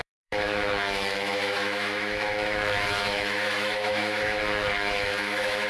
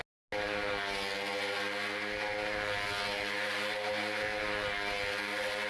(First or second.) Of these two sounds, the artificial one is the first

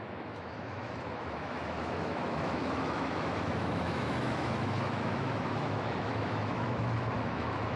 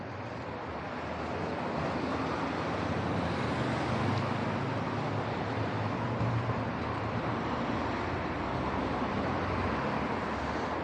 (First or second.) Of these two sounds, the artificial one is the first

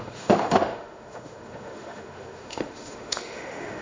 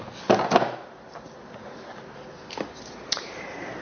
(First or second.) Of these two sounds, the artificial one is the first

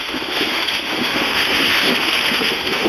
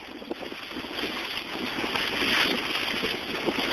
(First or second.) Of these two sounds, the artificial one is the first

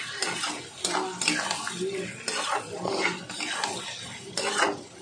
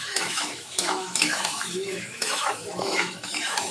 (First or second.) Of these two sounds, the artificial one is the second